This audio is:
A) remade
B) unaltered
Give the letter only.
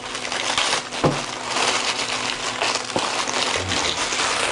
B